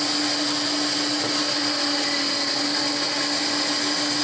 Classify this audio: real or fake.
real